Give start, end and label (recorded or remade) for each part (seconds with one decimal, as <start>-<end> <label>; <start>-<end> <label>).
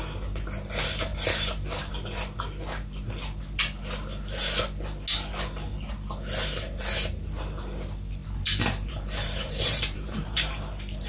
0.0-1.1 recorded; 1.1-1.9 remade; 1.9-8.2 recorded; 8.2-10.6 remade; 10.6-11.1 recorded